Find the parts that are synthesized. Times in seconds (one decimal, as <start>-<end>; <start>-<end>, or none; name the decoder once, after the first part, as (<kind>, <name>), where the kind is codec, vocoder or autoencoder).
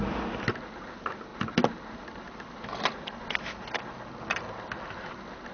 none